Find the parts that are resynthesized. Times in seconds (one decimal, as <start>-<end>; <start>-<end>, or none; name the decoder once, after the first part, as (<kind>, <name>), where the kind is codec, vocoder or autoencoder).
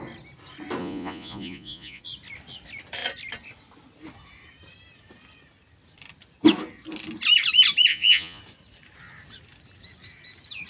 0.8-2.0 (vocoder, Vocos); 7.9-8.4